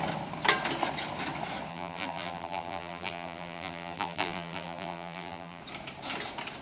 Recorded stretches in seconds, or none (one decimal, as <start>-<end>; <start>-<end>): 0.0-1.7; 5.6-6.6